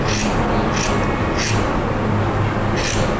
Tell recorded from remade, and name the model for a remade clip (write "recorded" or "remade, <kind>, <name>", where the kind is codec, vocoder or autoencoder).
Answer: recorded